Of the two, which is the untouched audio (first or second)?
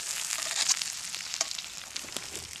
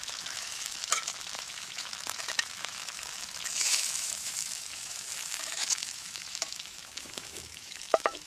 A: first